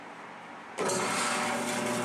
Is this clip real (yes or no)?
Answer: yes